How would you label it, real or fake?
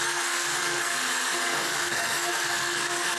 fake